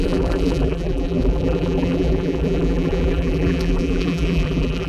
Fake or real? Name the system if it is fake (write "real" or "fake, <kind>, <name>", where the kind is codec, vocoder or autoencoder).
fake, vocoder, BigVGAN v2